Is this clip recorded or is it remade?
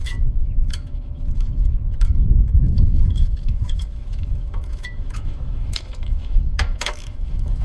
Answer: remade